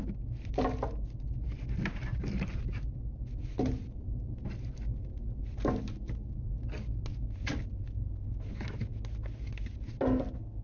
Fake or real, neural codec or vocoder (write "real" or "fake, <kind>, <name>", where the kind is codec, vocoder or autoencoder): real